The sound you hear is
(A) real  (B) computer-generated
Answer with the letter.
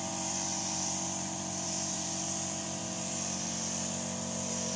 B